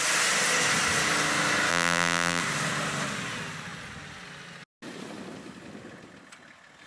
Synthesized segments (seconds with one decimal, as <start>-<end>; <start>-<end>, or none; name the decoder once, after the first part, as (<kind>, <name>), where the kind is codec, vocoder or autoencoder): 1.7-2.4 (vocoder, BigVGAN v2)